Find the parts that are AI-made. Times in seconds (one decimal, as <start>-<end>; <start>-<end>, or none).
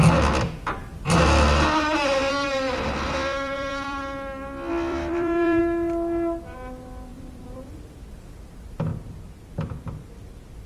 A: 0.8-4.0; 4.7-5.6; 7.1-8.2; 8.9-10.7